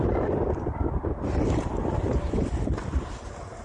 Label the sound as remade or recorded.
recorded